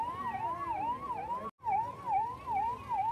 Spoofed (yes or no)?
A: no